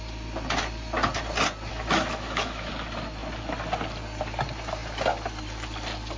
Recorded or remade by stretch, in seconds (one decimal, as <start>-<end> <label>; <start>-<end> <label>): 0.0-1.7 recorded; 1.7-2.7 remade; 2.7-6.2 recorded